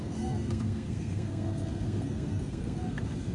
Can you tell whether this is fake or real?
fake